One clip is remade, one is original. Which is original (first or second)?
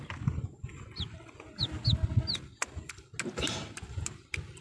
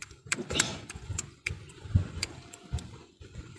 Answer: first